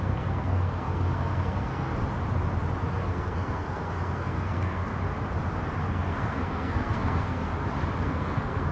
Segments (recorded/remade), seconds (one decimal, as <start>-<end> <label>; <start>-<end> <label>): 0.0-1.9 remade; 1.9-3.0 recorded; 3.0-4.9 remade; 4.9-5.8 recorded; 5.8-7.5 remade; 7.5-8.0 recorded; 8.0-8.7 remade